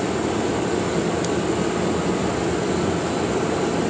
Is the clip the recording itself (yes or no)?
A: yes